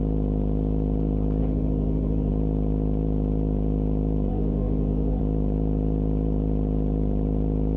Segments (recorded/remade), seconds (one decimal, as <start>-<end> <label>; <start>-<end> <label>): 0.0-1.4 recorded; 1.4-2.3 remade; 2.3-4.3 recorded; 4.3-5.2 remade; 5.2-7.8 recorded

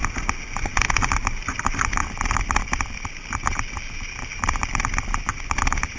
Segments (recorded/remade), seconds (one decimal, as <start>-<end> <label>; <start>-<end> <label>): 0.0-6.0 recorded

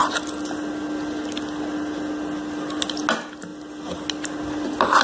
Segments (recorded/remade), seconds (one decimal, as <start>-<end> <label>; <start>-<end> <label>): 0.0-5.0 recorded